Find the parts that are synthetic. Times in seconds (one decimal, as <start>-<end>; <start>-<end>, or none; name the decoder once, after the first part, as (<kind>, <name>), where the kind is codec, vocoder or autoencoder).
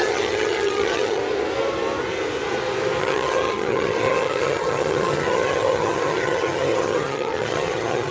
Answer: 0.0-1.2 (vocoder, HiFi-GAN); 3.0-8.1